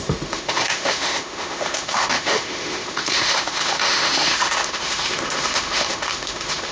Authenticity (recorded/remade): remade